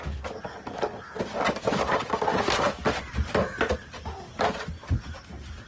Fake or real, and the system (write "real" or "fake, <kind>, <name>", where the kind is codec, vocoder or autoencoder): real